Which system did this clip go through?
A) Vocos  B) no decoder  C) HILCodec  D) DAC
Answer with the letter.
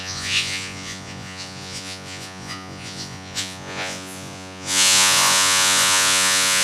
A